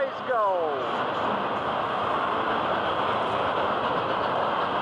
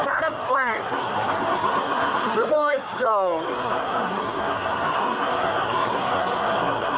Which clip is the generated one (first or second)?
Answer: second